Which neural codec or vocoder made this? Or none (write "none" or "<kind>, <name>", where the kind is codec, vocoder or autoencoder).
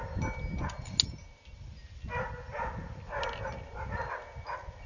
none